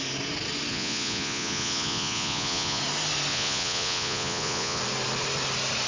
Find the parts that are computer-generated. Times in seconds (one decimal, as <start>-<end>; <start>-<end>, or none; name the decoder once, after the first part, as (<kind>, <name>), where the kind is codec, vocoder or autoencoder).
0.7-2.8 (vocoder, Vocos); 3.3-4.8